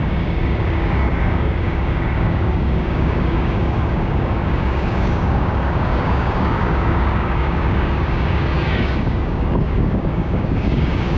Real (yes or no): no